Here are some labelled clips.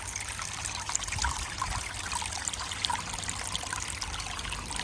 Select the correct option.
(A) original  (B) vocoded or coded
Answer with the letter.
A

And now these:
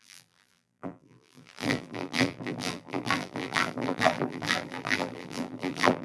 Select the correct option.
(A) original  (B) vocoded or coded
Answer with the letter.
B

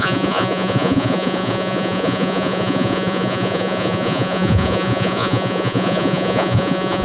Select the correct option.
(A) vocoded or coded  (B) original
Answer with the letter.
A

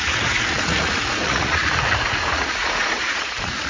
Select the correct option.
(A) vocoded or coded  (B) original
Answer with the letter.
A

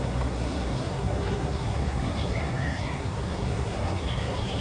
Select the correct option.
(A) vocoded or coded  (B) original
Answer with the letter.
A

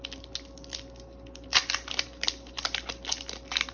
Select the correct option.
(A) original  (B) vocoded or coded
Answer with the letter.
A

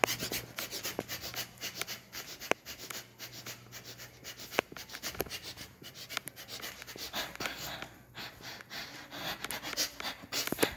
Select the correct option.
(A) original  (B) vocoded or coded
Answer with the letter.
A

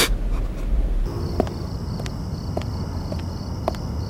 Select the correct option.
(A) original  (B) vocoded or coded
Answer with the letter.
A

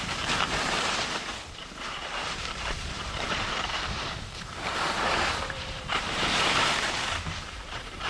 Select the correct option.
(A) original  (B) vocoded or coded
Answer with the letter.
B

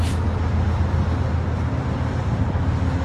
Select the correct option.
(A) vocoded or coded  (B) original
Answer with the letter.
B